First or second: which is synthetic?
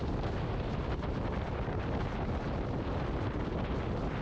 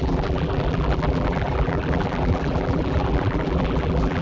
second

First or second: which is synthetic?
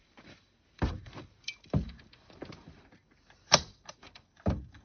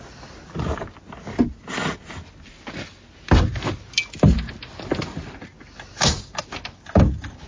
first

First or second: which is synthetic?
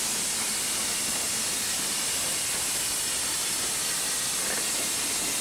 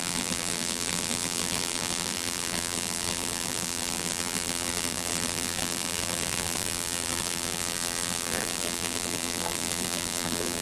second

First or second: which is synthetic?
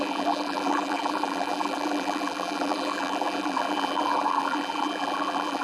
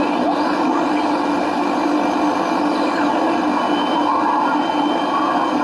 first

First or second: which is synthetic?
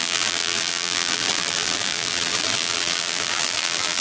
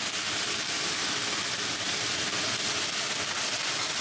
first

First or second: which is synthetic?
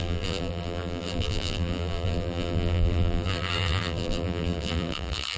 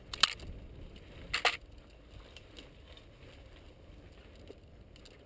first